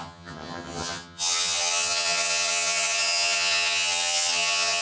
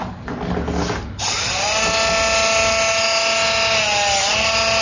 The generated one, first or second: first